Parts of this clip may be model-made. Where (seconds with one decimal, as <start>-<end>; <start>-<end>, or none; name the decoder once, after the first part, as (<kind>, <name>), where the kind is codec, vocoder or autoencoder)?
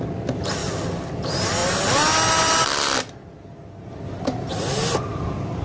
none